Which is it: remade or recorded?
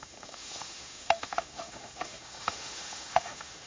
remade